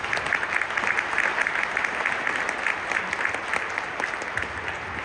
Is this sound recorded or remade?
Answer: recorded